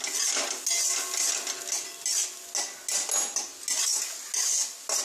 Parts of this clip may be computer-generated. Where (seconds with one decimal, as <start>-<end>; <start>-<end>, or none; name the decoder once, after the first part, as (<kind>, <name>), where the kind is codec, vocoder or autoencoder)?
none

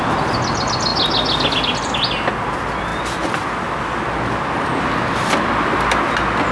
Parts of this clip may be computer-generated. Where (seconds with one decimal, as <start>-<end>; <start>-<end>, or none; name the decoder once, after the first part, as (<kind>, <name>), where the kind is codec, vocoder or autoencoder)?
none

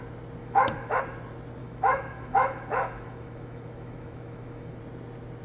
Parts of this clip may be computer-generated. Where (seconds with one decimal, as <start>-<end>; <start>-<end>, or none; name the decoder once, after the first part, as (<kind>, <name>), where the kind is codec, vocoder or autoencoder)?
0.4-1.0 (autoencoder, DAC-VAE); 1.6-4.8